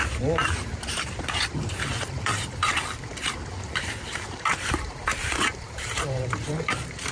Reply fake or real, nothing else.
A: fake